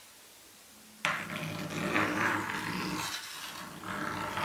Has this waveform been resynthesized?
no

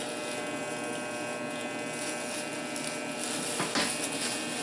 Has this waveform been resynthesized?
no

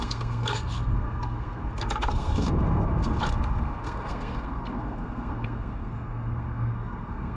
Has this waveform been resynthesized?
yes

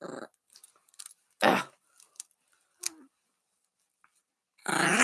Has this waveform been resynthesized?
no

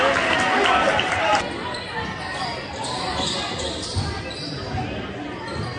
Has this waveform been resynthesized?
no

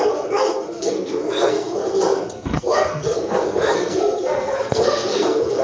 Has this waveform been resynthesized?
yes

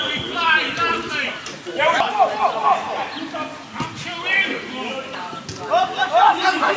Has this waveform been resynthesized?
no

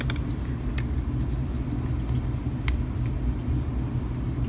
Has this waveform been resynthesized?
no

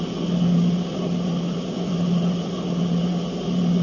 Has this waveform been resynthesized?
no